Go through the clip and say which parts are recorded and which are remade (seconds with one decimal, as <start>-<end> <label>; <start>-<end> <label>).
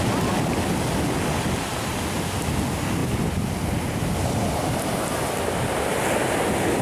0.0-6.8 recorded